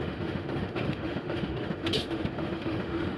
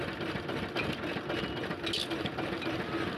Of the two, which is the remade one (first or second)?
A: first